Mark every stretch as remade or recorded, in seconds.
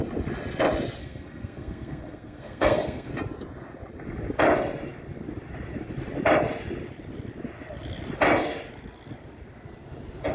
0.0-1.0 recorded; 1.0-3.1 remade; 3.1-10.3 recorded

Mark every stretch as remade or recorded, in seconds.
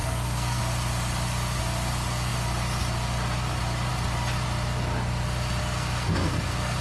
0.0-0.6 remade; 0.6-5.6 recorded; 5.6-6.8 remade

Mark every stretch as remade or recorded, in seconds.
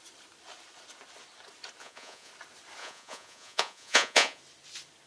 0.0-1.8 recorded; 1.8-2.3 remade; 2.3-2.8 recorded; 2.8-4.4 remade; 4.4-5.1 recorded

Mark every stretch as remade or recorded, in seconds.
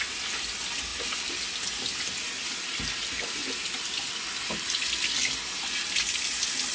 0.0-3.4 recorded; 3.4-4.1 remade; 4.1-6.7 recorded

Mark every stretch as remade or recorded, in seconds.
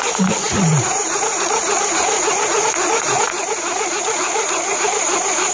0.0-5.5 remade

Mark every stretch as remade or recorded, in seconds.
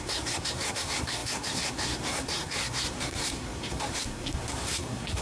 0.0-5.2 remade